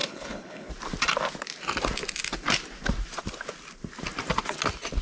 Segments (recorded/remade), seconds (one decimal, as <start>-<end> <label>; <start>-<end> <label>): 0.0-0.7 remade; 0.7-5.0 recorded

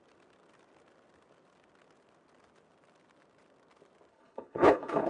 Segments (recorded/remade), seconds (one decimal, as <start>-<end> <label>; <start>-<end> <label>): 0.0-4.1 recorded; 4.1-5.1 remade

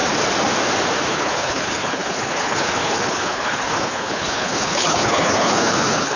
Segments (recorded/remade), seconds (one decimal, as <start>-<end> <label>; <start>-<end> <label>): 0.0-1.1 recorded; 1.1-6.2 remade

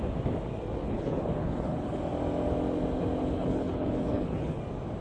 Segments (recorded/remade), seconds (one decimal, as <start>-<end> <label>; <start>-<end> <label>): 0.0-0.8 recorded; 0.8-2.0 remade; 2.0-3.2 recorded; 3.2-4.6 remade; 4.6-5.0 recorded

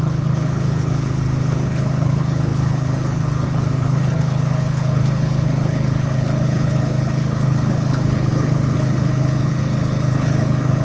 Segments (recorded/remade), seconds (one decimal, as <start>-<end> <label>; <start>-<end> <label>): 0.0-10.8 remade

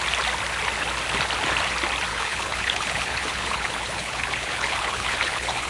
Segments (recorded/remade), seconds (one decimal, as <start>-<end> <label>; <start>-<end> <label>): 0.0-2.1 recorded; 2.1-5.7 remade

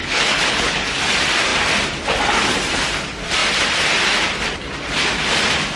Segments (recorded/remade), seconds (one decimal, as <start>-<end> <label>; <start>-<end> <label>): 0.0-0.9 remade; 0.9-5.8 recorded

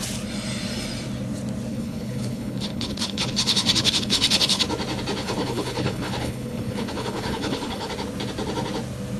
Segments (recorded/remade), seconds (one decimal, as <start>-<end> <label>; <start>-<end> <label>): 0.0-1.7 recorded; 1.7-4.6 remade; 4.6-5.2 recorded; 5.2-7.9 remade; 7.9-9.2 recorded